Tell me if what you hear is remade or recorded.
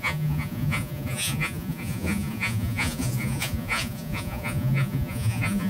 remade